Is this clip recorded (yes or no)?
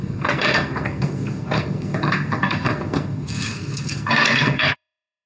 no